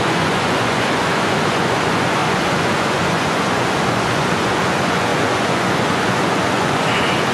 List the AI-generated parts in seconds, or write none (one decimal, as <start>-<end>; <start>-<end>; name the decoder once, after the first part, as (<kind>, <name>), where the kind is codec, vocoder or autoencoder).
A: 0.0-7.3 (vocoder, Vocos)